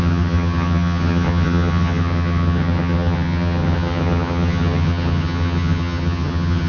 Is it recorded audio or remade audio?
remade